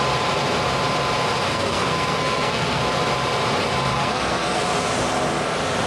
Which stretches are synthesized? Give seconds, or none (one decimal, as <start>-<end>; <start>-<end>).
1.5-2.8; 3.9-4.6